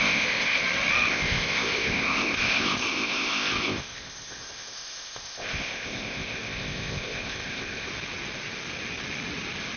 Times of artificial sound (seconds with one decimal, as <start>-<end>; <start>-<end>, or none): 0.0-0.6; 1.1-7.9